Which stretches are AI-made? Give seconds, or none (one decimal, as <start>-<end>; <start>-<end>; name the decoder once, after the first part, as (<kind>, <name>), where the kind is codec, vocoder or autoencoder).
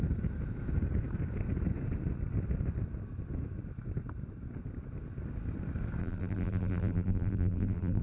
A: 6.0-8.0 (vocoder, BigVGAN v2)